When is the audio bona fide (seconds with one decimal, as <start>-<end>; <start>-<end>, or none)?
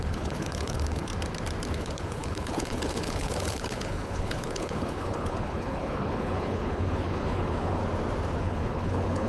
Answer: 1.1-1.7; 7.8-8.4